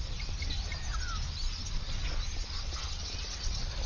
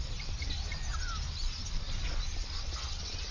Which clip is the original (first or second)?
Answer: first